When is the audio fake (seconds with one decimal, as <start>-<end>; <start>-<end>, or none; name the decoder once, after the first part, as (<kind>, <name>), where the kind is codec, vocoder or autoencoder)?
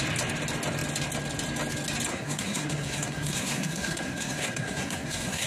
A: 2.1-5.5 (codec, SNAC)